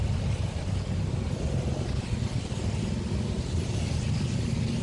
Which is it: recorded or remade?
recorded